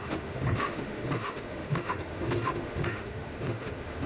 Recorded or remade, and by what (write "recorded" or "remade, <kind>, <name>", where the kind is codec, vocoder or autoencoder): remade, autoencoder, DAC-VAE